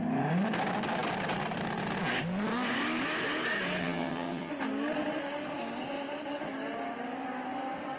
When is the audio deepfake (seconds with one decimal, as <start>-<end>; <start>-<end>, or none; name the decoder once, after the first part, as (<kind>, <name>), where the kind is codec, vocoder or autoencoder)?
3.8-4.5 (vocoder, HiFi-GAN)